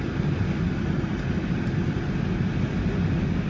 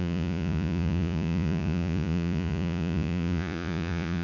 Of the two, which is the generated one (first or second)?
second